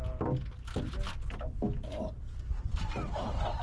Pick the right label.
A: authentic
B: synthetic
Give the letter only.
A